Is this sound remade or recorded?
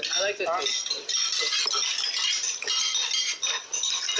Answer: recorded